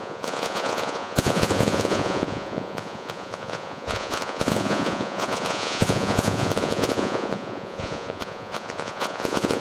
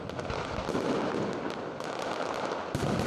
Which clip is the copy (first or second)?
first